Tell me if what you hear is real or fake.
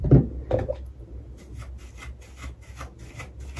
real